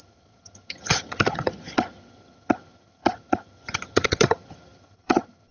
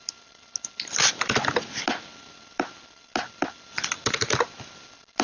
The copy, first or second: first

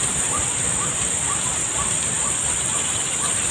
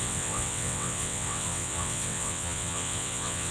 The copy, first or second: second